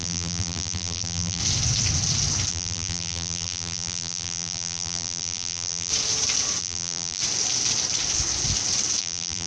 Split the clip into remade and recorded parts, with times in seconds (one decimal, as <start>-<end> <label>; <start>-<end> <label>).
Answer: 0.0-1.4 remade; 1.4-2.5 recorded; 2.5-5.9 remade; 5.9-6.6 recorded; 6.6-7.2 remade; 7.2-9.0 recorded; 9.0-9.5 remade